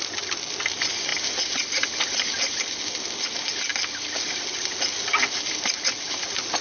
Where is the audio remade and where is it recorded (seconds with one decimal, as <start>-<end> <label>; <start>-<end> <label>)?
0.0-6.6 recorded